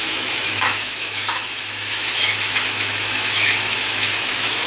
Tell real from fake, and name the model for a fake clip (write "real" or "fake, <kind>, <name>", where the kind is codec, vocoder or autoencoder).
fake, autoencoder, DAC-VAE